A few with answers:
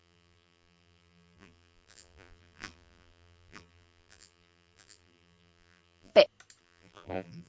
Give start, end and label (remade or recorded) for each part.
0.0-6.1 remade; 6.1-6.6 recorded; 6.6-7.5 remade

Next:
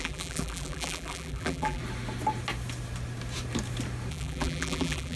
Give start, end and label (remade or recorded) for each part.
0.0-1.8 remade; 1.8-4.1 recorded; 4.1-5.2 remade

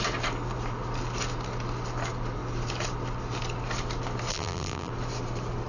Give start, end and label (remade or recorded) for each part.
0.0-4.3 recorded; 4.3-4.9 remade; 4.9-5.7 recorded

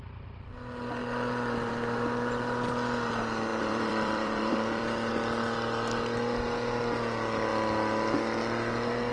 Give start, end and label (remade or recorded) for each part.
0.0-3.5 recorded; 3.5-5.1 remade; 5.1-9.1 recorded